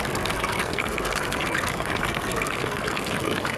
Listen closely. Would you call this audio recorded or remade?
remade